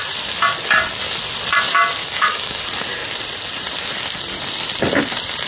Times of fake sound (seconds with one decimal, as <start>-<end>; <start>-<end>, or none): 2.0-2.6